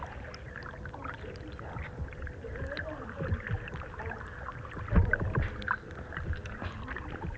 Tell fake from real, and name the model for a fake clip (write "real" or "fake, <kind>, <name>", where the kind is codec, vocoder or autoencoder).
real